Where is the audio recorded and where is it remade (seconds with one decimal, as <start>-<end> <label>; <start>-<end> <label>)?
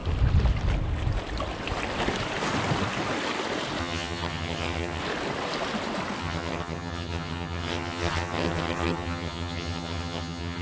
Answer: 0.0-3.8 recorded; 3.8-5.0 remade; 5.0-6.2 recorded; 6.2-10.6 remade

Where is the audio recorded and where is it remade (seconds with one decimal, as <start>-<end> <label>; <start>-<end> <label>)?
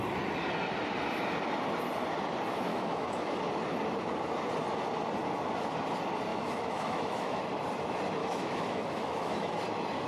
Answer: 0.0-2.7 recorded; 2.7-3.3 remade; 3.3-6.3 recorded; 6.3-7.4 remade; 7.4-8.2 recorded; 8.2-9.6 remade; 9.6-10.1 recorded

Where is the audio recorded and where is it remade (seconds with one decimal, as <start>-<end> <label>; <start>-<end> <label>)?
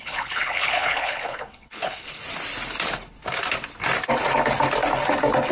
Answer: 0.0-2.2 remade; 2.2-5.5 recorded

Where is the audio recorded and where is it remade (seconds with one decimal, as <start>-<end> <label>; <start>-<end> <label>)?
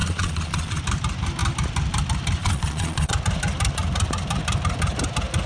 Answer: 0.0-0.8 remade; 0.8-2.4 recorded; 2.4-3.1 remade; 3.1-5.5 recorded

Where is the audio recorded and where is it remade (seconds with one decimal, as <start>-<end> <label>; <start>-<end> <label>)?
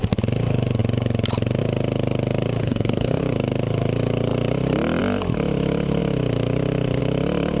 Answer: 0.0-2.6 recorded; 2.6-3.2 remade; 3.2-7.6 recorded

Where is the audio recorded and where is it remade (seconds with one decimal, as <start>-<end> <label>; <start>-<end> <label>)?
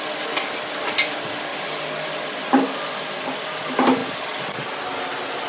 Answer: 0.0-1.5 recorded; 1.5-3.0 remade; 3.0-5.5 recorded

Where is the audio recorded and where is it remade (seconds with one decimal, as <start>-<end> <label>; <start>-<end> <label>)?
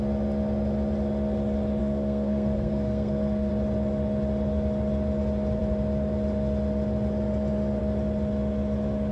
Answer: 0.0-1.8 recorded; 1.8-3.5 remade; 3.5-9.1 recorded